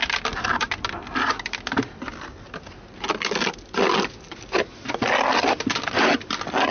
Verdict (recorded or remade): recorded